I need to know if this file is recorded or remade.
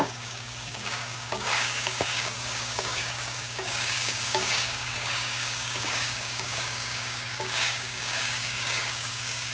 remade